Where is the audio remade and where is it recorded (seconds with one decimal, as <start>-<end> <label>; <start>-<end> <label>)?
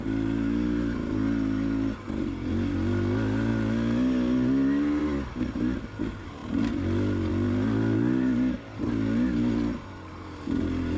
0.0-11.0 recorded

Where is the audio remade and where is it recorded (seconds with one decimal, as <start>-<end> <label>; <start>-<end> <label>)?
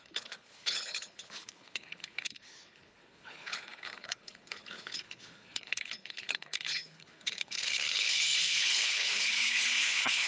0.0-10.3 remade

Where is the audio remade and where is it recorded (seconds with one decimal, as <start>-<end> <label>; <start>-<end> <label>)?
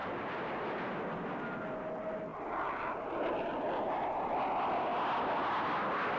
0.0-6.2 recorded